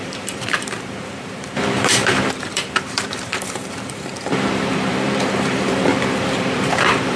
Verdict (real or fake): fake